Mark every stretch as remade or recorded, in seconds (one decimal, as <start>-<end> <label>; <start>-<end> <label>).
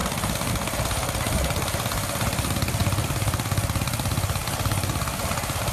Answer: 0.0-5.7 recorded